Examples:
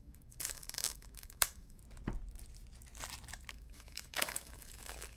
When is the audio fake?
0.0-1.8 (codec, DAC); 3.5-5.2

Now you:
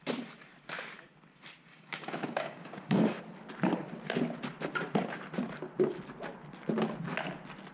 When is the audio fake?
1.7-3.2 (codec, DAC)

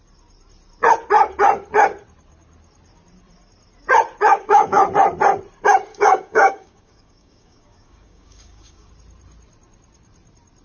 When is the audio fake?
4.2-4.8 (codec, DAC); 5.9-8.9

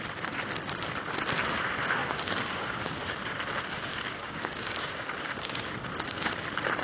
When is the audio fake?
2.0-3.0 (codec, DAC); 3.9-5.7

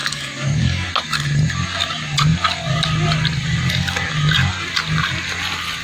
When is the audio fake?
0.0-0.9 (codec, DAC)

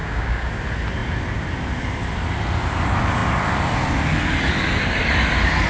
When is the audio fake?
0.0-0.5 (codec, DAC)

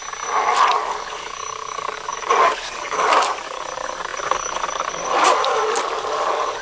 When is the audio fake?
0.7-6.6 (codec, DAC)